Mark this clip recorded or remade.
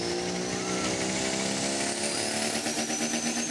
recorded